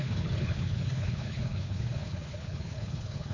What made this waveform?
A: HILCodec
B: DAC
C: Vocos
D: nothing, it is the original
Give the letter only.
A